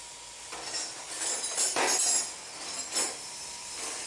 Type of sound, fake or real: real